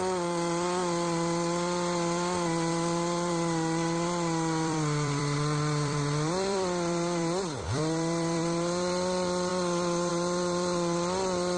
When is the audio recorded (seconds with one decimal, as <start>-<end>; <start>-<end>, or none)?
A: 9.5-10.1